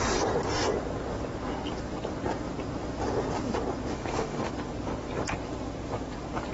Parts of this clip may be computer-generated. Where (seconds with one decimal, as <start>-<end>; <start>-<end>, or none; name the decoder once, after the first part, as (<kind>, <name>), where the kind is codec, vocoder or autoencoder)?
3.9-4.5 (autoencoder, DAC-VAE)